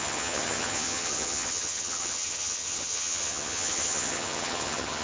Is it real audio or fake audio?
fake